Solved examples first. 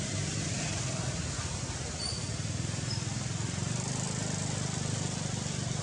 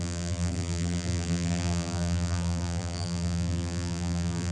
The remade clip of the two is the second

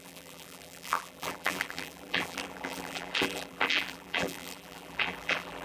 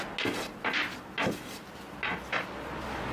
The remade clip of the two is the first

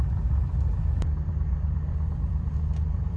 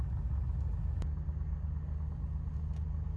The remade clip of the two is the first